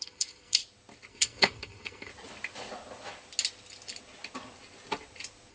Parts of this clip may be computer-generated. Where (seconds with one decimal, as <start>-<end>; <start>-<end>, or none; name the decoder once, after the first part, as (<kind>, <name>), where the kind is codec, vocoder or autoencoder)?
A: 0.0-0.6 (codec, SNAC); 1.1-2.1